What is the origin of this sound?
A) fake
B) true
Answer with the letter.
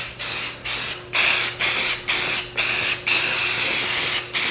B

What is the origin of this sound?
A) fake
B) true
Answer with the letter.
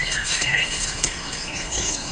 A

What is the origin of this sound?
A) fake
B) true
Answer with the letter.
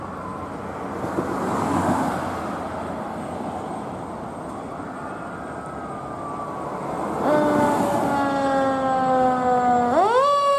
B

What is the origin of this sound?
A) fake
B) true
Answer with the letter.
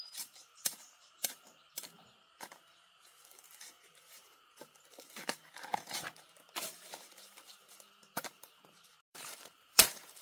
A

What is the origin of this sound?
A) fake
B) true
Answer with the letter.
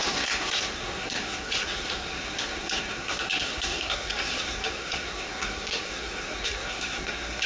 A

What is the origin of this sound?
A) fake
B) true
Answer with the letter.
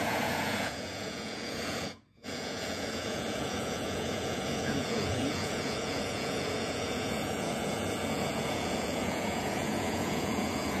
A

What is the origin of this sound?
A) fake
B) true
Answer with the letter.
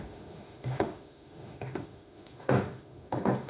A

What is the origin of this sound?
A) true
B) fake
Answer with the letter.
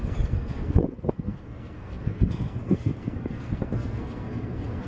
B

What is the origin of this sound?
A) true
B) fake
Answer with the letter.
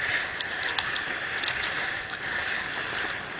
A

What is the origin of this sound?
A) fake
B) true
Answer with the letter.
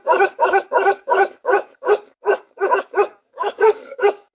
A